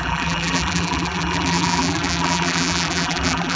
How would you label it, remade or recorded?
remade